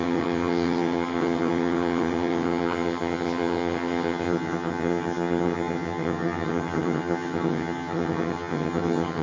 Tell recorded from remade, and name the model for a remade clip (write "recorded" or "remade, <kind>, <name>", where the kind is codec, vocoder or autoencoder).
remade, vocoder, HiFi-GAN